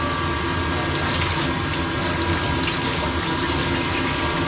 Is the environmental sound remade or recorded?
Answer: recorded